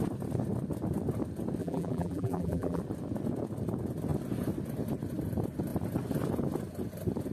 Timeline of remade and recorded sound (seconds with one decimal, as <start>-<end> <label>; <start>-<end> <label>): 0.0-1.6 recorded; 1.6-2.8 remade; 2.8-7.3 recorded